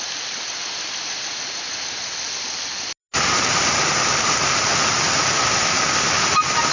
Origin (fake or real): real